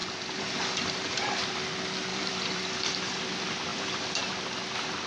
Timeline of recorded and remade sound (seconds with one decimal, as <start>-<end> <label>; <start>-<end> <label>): 0.0-1.4 remade; 1.4-2.1 recorded; 2.1-3.2 remade; 3.2-3.7 recorded; 3.7-4.2 remade; 4.2-5.1 recorded